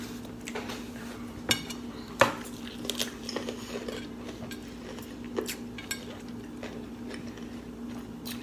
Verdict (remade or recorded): recorded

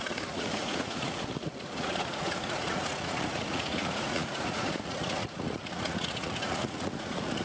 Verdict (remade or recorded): remade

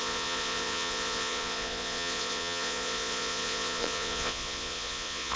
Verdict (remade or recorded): remade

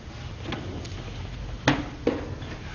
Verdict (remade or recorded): recorded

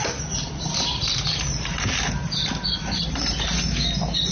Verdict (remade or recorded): recorded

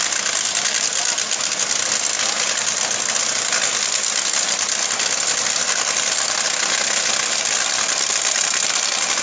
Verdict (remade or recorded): recorded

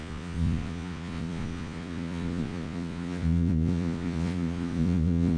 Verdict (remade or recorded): remade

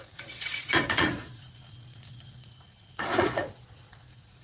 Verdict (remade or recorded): remade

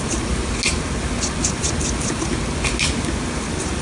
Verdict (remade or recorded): recorded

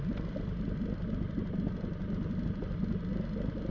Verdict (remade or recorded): recorded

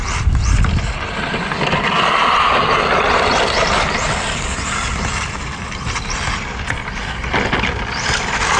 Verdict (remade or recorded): recorded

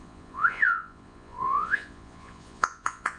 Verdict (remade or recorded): remade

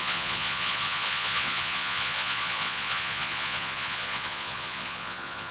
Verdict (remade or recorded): remade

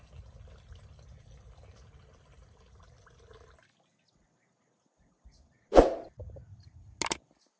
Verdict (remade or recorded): recorded